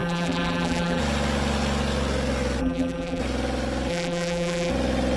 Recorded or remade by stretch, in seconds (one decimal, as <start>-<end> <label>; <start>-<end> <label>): 0.0-1.0 remade; 1.0-2.6 recorded; 2.6-3.2 remade; 3.2-3.9 recorded; 3.9-4.7 remade; 4.7-5.2 recorded